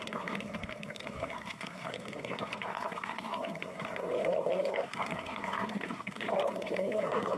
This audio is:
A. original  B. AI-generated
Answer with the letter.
B